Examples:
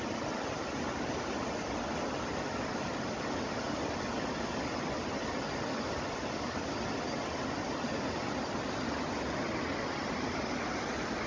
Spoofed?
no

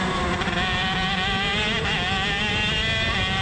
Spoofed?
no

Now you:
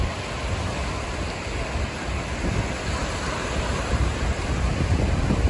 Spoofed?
no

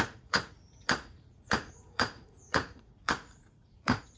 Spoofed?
yes